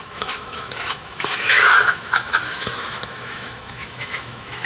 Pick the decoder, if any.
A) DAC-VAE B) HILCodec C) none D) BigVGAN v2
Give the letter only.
A